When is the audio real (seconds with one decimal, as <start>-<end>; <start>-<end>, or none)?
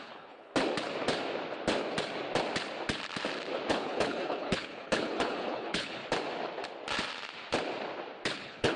0.5-3.7; 6.0-8.4